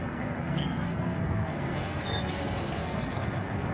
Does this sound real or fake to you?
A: fake